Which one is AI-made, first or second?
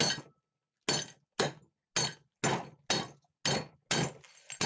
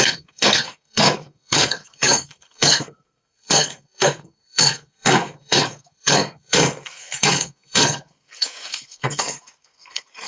second